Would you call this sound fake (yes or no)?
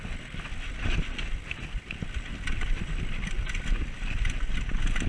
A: no